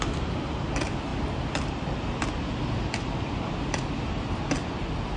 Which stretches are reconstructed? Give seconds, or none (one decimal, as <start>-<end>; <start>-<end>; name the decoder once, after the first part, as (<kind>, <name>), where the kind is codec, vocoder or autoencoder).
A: none